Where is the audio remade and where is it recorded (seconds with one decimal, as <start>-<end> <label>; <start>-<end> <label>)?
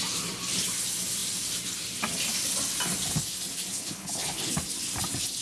0.0-3.7 recorded; 3.7-4.5 remade; 4.5-5.4 recorded